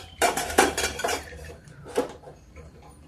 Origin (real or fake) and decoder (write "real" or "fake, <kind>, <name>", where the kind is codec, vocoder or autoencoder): fake, vocoder, BigVGAN v2